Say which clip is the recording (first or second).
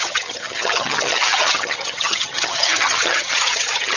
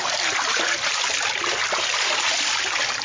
second